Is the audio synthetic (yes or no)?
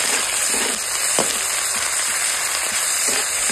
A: no